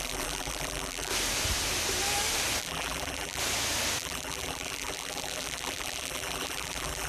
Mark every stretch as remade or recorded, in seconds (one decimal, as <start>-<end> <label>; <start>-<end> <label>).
0.0-1.1 remade; 1.1-2.6 recorded; 2.6-3.4 remade; 3.4-4.0 recorded; 4.0-7.1 remade